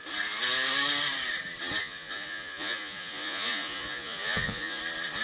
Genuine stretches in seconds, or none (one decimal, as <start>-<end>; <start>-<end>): 0.0-1.8; 4.8-5.2